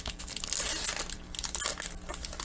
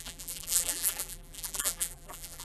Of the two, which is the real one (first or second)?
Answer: first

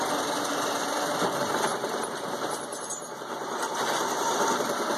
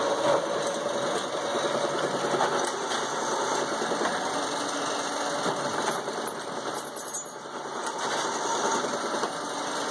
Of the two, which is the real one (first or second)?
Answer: second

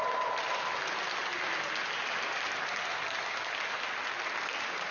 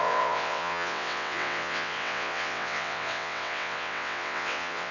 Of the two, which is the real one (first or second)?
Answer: first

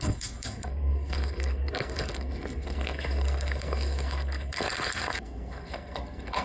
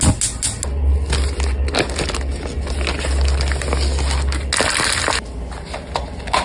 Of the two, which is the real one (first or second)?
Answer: second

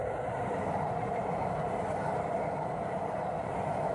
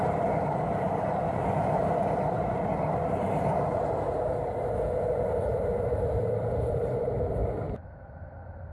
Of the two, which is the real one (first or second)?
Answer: first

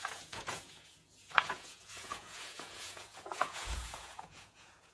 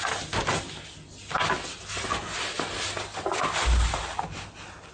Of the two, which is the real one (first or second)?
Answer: second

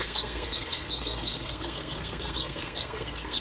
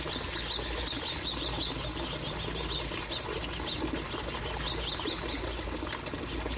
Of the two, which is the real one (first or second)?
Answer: second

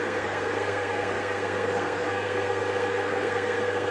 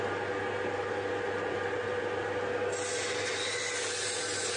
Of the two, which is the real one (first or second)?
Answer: second